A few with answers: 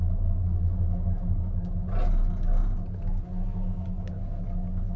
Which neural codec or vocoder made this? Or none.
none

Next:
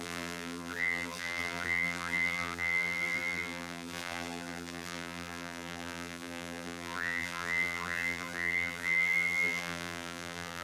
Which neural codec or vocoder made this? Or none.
vocoder, BigVGAN v2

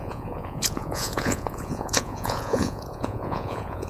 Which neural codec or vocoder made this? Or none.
vocoder, Vocos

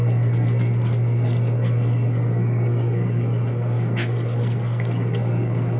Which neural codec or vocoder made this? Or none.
codec, SNAC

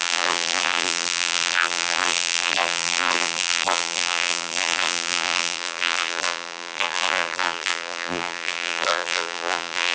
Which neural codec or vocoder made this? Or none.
vocoder, BigVGAN v2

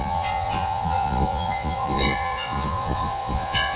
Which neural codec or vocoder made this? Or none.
vocoder, Vocos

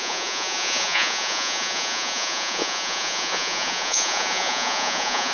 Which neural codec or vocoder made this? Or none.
vocoder, Vocos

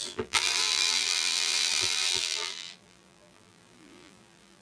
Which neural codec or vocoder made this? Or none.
vocoder, BigVGAN v2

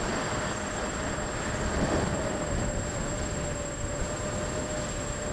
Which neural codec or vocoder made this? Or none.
none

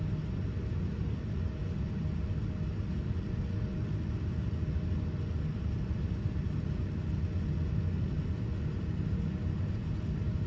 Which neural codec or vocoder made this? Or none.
none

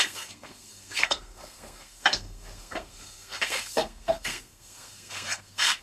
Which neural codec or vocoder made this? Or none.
codec, SNAC